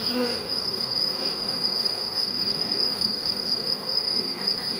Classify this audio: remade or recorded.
remade